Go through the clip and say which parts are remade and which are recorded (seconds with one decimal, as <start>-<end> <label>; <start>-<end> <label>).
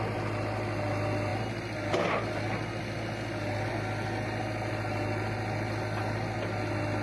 0.0-7.0 recorded